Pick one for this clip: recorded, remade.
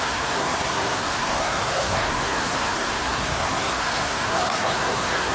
remade